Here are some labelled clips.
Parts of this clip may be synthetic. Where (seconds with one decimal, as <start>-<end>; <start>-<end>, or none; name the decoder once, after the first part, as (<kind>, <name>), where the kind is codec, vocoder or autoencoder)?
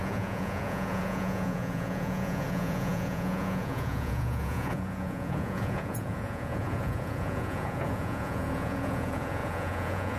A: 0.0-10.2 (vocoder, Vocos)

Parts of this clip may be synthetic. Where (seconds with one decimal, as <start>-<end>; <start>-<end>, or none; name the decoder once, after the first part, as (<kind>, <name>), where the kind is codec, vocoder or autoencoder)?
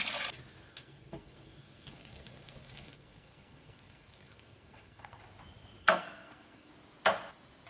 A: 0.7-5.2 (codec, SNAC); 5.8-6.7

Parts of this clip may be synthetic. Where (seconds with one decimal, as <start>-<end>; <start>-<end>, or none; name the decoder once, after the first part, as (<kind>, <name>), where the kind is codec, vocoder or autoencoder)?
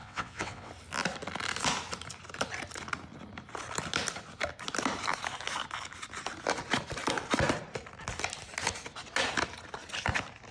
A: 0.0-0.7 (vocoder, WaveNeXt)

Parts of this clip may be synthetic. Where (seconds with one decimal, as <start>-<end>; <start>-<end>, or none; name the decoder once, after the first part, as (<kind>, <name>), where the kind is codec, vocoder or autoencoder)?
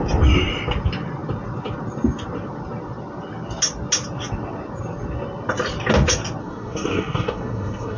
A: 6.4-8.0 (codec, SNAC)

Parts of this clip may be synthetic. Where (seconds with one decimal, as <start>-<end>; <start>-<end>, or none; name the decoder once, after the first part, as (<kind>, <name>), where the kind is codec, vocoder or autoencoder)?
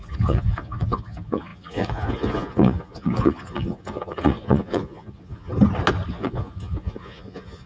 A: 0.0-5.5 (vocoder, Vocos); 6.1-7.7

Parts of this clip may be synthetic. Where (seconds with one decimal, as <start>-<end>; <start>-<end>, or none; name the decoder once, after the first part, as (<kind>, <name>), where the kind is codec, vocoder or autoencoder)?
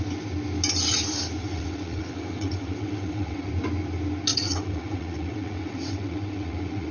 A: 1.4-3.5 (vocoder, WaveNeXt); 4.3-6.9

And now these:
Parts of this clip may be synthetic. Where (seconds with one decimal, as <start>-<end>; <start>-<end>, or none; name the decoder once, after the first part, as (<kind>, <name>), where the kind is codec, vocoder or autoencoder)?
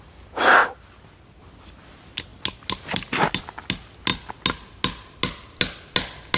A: none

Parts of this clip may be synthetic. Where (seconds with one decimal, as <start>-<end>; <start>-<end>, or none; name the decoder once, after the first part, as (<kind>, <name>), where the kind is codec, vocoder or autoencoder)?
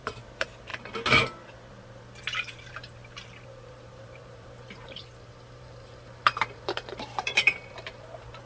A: 0.0-0.7 (vocoder, BigVGAN v2); 2.2-3.0; 3.7-8.5